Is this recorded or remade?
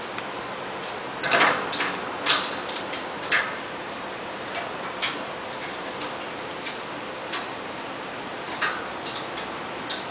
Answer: recorded